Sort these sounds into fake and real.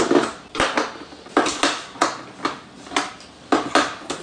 fake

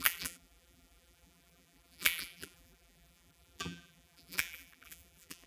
fake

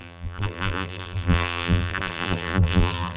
fake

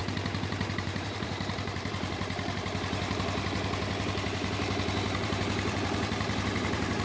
fake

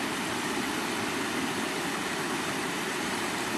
real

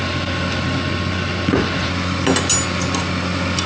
real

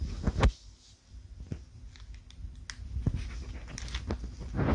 real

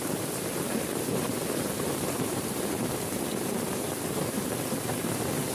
fake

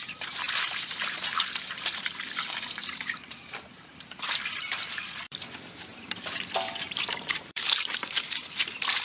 fake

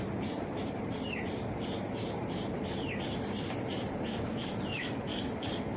fake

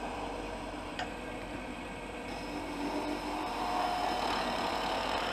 fake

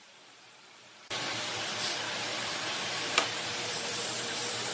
fake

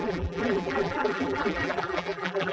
fake